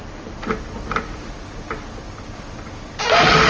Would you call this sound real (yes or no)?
yes